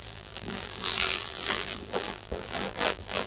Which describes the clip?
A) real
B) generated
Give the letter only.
B